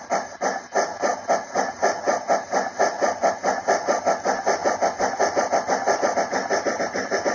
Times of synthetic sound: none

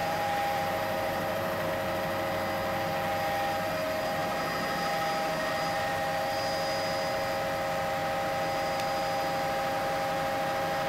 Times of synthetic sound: 0.0-1.7